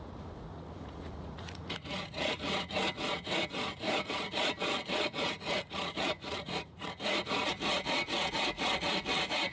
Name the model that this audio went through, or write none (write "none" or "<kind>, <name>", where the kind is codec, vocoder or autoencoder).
vocoder, Vocos